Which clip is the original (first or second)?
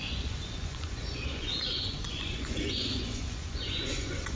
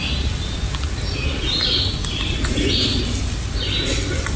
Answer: second